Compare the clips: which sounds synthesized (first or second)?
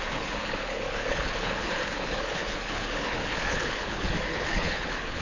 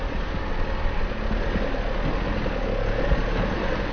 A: first